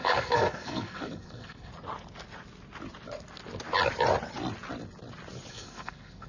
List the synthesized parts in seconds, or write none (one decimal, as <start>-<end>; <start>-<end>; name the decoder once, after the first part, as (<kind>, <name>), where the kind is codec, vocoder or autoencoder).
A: 0.0-1.7 (codec, SNAC); 5.5-6.3